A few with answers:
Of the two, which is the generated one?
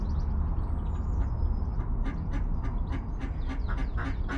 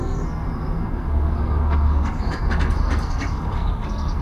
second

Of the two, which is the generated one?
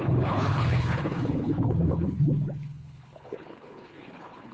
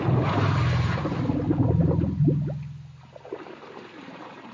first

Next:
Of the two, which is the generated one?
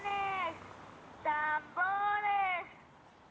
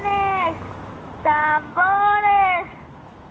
second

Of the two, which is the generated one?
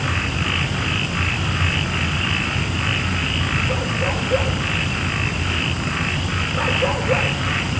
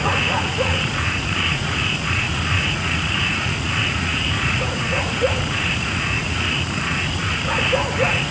second